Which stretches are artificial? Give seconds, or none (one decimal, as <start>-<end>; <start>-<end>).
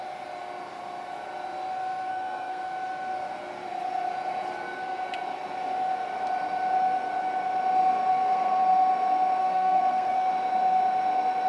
2.1-2.6; 8.1-8.6; 9.4-10.3